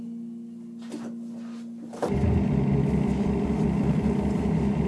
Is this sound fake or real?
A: real